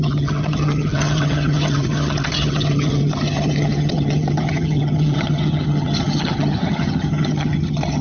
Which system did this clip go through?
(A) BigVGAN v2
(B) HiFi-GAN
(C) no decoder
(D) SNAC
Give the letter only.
B